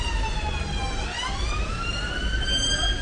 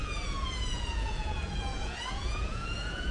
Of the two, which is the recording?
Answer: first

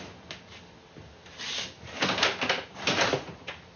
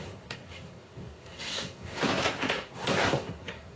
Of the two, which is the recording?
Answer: first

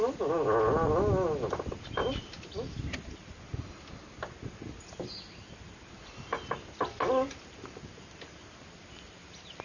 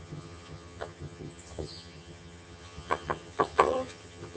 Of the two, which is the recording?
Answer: first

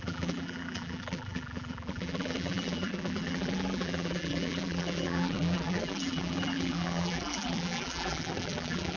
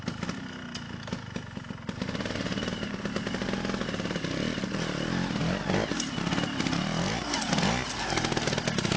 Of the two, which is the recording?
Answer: second